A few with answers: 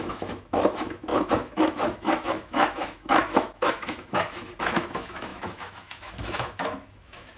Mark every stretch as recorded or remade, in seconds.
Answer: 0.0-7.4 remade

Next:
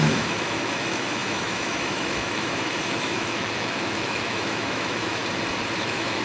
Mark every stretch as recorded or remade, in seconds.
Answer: 0.0-5.2 remade; 5.2-5.8 recorded; 5.8-6.2 remade

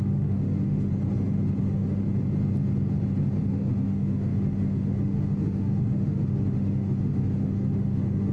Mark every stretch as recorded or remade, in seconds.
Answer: 0.0-0.9 remade; 0.9-1.6 recorded; 1.6-2.0 remade; 2.0-3.5 recorded; 3.5-8.3 remade

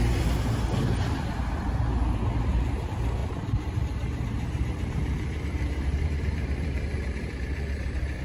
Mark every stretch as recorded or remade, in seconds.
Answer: 0.0-3.2 recorded; 3.2-8.2 remade

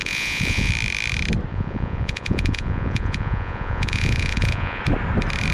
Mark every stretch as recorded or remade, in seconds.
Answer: 0.0-0.7 remade; 0.7-1.5 recorded; 1.5-4.8 remade; 4.8-5.5 recorded

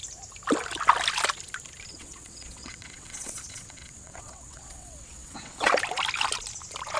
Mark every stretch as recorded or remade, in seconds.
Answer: 0.0-1.9 recorded; 1.9-5.7 remade; 5.7-7.0 recorded